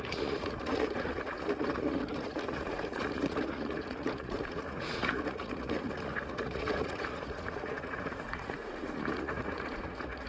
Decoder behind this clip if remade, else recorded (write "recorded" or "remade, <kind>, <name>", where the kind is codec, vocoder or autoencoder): remade, vocoder, Vocos